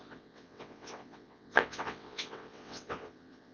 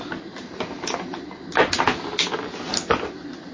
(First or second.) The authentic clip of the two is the second